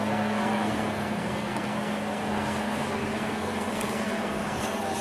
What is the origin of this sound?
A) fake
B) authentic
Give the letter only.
A